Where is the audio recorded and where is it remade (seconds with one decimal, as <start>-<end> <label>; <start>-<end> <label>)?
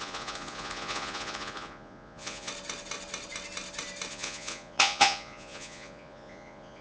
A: 0.0-2.5 remade; 2.5-4.1 recorded; 4.1-6.8 remade